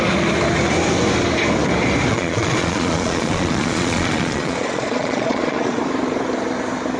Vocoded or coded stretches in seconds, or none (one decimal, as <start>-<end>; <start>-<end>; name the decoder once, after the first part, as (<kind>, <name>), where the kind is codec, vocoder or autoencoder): 2.1-5.8 (vocoder, Vocos)